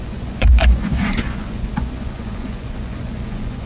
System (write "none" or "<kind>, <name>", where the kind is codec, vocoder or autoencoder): vocoder, Vocos